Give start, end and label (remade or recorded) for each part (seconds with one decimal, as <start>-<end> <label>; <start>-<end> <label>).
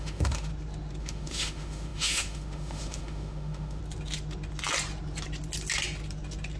0.0-0.5 remade; 0.5-1.0 recorded; 1.0-3.8 remade; 3.8-6.6 recorded